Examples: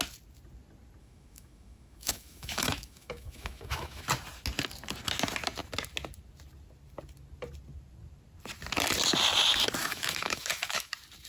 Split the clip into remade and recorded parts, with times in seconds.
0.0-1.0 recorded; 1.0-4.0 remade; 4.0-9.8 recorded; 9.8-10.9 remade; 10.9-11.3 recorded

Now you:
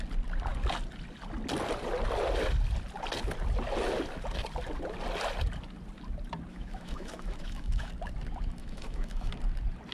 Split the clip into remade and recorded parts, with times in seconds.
0.0-6.5 recorded; 6.5-7.9 remade; 7.9-8.6 recorded; 8.6-9.3 remade; 9.3-9.9 recorded

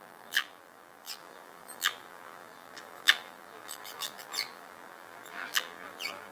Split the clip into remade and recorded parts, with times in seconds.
0.0-6.3 remade